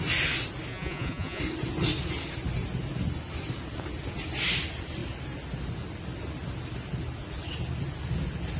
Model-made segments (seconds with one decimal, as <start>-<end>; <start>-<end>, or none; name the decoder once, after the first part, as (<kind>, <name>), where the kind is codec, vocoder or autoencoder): 0.7-1.4 (vocoder, Vocos)